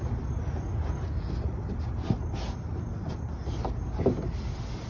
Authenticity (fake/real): real